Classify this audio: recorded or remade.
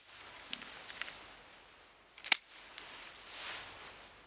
recorded